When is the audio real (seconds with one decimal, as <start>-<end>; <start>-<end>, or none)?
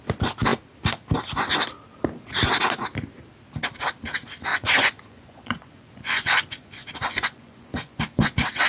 0.0-4.5